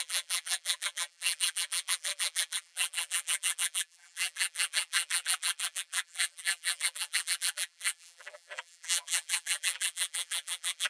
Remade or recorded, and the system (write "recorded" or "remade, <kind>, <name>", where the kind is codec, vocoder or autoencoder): remade, vocoder, BigVGAN v2